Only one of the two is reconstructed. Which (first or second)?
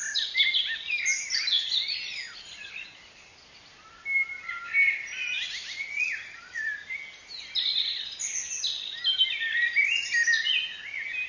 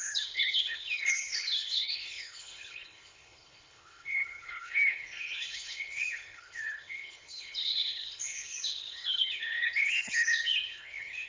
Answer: second